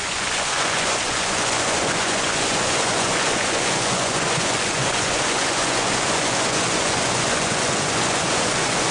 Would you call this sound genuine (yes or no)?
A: no